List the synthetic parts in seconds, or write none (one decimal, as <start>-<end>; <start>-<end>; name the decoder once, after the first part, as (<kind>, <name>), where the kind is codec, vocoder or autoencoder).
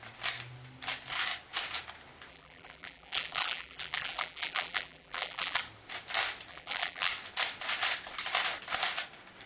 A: 2.3-5.6 (vocoder, BigVGAN v2); 6.5-7.1